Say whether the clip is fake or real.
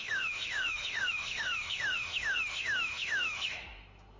fake